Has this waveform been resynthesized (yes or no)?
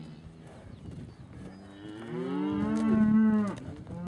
no